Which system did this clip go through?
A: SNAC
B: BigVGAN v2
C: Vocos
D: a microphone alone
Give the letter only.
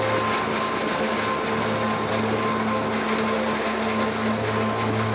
D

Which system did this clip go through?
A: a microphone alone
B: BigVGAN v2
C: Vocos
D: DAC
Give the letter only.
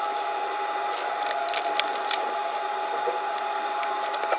A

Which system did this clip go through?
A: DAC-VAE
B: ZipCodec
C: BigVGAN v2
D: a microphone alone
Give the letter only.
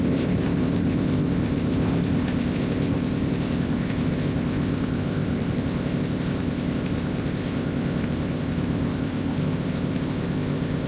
B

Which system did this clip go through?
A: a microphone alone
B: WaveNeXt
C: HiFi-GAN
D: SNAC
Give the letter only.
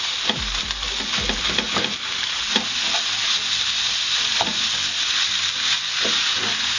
A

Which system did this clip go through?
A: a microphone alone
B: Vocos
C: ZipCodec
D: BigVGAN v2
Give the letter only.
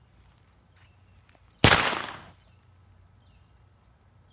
A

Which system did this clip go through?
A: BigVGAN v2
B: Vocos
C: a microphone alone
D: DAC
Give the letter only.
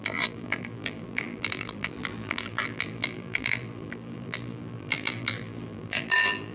A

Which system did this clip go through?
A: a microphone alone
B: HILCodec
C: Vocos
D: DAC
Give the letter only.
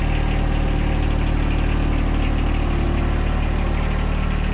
A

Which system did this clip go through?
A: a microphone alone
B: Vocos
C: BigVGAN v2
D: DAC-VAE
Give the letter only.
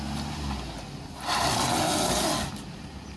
A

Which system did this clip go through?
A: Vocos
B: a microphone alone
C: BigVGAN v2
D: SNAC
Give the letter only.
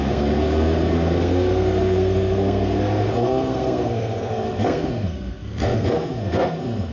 D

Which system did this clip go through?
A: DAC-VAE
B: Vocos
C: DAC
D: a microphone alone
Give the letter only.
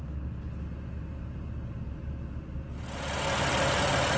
D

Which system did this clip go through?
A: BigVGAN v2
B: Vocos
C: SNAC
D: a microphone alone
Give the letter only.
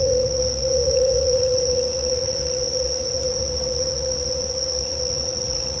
B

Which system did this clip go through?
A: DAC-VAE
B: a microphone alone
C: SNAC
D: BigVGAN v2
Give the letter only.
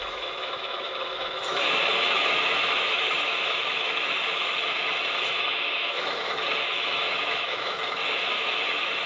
A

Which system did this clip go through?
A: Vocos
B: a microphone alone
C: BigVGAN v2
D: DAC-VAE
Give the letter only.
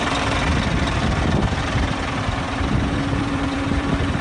C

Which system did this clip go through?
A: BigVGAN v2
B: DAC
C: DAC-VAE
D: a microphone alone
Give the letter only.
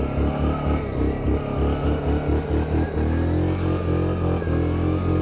D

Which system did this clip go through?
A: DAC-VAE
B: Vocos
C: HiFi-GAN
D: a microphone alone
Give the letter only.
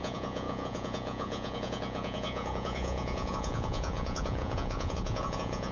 B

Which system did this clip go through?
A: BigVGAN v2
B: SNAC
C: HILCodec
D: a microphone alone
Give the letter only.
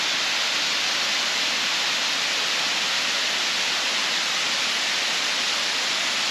D